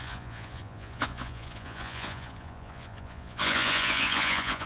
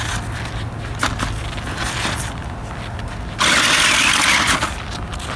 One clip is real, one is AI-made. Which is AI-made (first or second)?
first